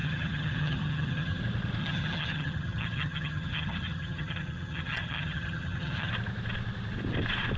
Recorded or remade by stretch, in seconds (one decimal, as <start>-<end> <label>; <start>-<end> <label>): 0.0-1.4 remade; 1.4-1.8 recorded; 1.8-6.1 remade; 6.1-7.6 recorded